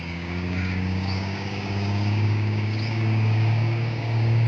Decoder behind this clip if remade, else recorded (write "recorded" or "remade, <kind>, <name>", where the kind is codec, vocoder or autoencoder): remade, codec, DAC